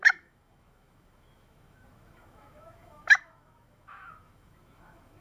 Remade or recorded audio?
remade